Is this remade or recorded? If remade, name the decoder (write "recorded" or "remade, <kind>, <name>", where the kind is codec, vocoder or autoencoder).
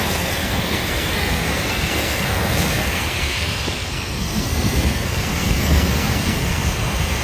remade, codec, SNAC